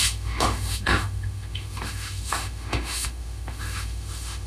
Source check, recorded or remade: remade